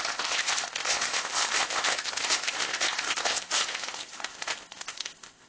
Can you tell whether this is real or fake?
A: fake